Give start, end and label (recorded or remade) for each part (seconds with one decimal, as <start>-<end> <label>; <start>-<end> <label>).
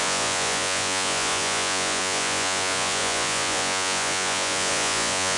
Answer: 0.0-5.4 remade